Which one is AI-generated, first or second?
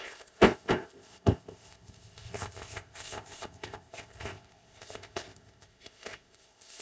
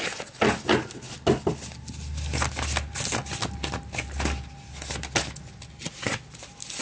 first